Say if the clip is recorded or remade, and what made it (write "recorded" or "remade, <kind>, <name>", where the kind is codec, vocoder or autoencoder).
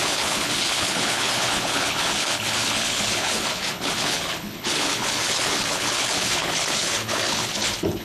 remade, codec, HILCodec